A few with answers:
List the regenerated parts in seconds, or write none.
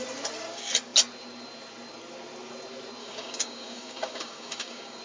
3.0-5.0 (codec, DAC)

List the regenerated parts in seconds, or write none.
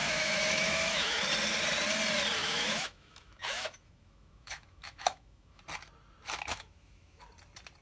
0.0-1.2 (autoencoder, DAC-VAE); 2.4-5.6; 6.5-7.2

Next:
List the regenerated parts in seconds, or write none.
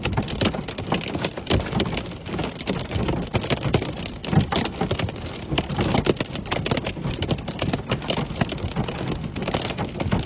none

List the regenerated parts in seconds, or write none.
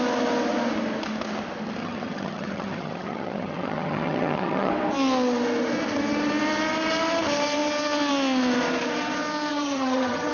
1.8-4.7 (vocoder, HiFi-GAN); 9.5-10.3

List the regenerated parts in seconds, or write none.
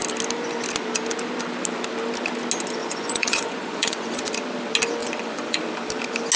2.8-4.3 (vocoder, Vocos); 5.0-5.6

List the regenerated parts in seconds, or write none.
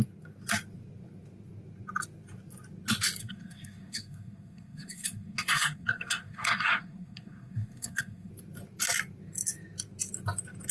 3.2-8.3 (codec, SNAC)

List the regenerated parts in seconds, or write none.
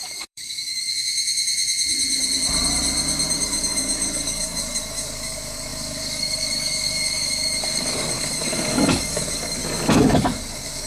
0.0-0.9 (codec, DAC); 3.3-9.6; 10.2-10.9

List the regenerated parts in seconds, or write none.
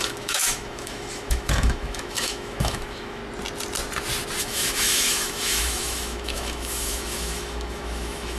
0.0-3.2 (autoencoder, DAC-VAE); 4.4-8.4